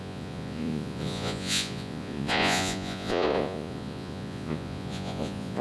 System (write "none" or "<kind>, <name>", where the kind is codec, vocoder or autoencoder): vocoder, Vocos